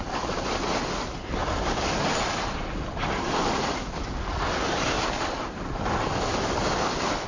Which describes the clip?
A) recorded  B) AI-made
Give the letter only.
A